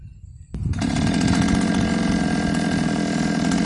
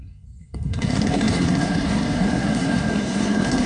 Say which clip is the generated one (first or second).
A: second